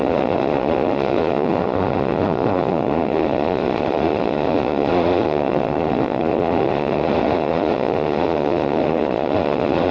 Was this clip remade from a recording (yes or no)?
yes